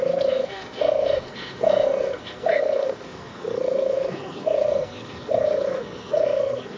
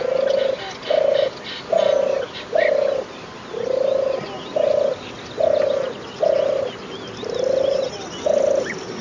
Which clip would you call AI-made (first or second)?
first